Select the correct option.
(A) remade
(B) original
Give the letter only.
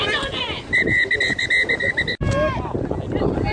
B